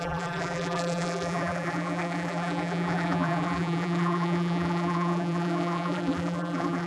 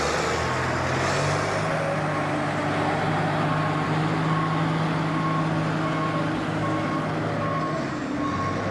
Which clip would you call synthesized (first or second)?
first